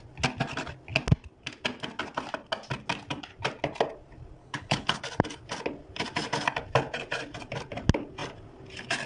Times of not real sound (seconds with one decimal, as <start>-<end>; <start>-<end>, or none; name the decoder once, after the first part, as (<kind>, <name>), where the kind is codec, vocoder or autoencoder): 4.4-5.0 (codec, HILCodec)